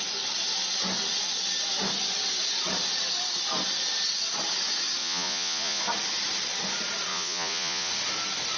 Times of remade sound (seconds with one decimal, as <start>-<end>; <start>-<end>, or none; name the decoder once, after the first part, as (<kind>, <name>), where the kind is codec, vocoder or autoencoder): 5.0-5.8 (vocoder, Vocos); 7.1-7.9